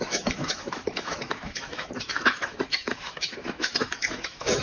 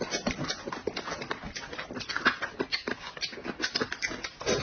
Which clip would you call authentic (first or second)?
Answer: second